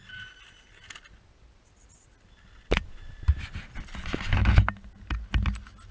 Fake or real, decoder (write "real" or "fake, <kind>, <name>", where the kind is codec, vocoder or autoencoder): real